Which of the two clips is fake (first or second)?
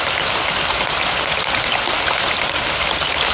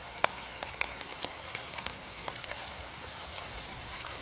second